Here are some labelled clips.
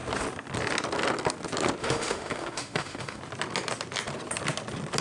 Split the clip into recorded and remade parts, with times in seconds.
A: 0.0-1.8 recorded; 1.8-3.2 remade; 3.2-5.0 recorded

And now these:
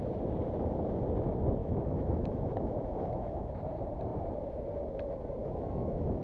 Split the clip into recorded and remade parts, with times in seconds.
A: 0.0-1.6 recorded; 1.6-3.5 remade; 3.5-5.4 recorded; 5.4-6.2 remade